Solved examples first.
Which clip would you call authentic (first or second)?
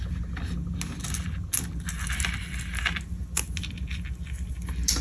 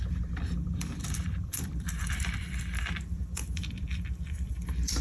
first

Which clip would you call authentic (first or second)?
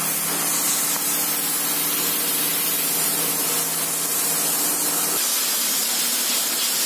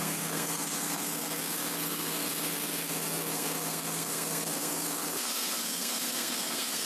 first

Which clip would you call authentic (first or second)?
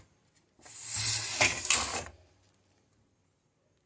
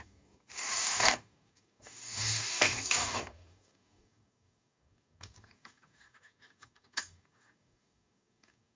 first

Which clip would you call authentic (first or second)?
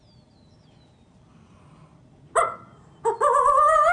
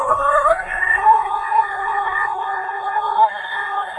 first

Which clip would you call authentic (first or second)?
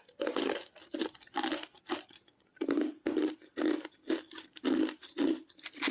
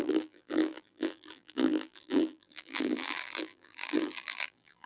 first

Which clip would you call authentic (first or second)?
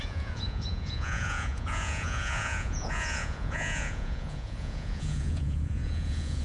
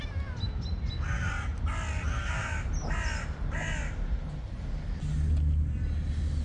second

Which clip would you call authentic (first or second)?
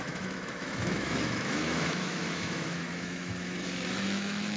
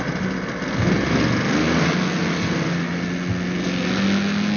second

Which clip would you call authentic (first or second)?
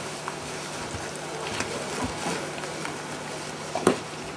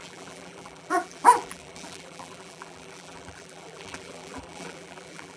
first